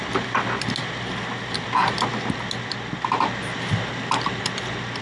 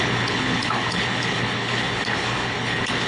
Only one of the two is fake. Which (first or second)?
second